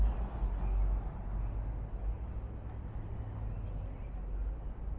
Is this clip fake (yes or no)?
no